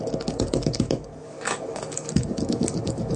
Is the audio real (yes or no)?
no